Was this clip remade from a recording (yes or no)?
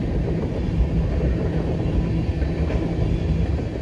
no